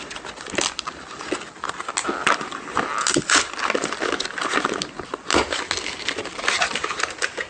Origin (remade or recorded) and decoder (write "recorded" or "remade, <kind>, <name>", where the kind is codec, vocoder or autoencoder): recorded